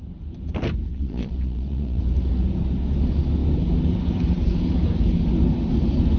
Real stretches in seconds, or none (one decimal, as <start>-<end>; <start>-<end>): 0.0-0.9; 2.0-6.2